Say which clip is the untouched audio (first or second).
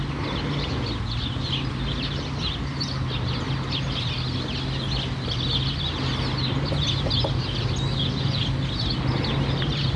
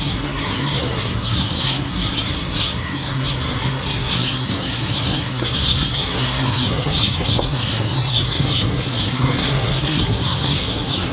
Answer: first